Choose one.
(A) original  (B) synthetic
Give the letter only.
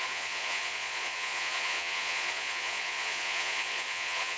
B